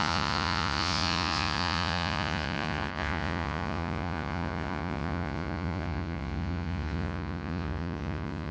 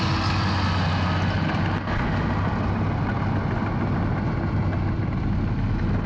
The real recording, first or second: second